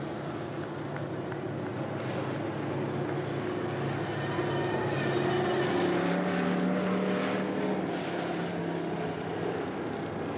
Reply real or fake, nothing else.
real